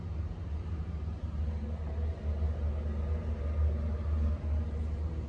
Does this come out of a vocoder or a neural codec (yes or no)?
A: no